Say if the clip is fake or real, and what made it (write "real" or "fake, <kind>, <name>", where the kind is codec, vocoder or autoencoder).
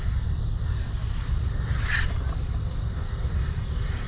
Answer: real